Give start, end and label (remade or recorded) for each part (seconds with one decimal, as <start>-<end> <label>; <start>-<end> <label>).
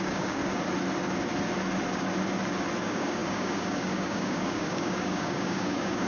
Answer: 0.0-0.4 remade; 0.4-2.8 recorded; 2.8-6.1 remade